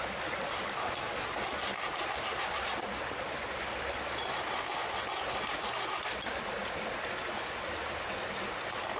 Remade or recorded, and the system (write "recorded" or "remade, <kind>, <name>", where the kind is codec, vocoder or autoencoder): recorded